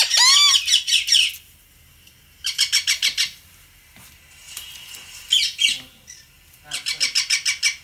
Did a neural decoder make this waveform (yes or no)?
no